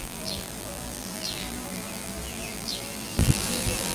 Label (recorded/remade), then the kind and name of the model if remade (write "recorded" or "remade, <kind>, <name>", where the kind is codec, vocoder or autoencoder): remade, vocoder, BigVGAN v2